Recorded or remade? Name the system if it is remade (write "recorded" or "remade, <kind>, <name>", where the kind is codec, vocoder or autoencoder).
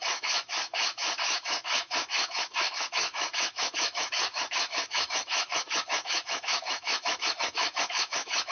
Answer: remade, autoencoder, DAC-VAE